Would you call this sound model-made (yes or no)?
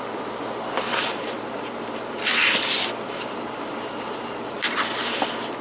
yes